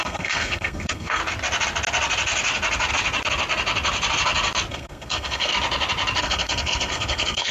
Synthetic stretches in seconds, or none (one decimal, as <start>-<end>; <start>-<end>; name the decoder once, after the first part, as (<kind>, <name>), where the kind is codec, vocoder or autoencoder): 0.0-1.2 (codec, SNAC); 4.7-5.5; 6.2-7.5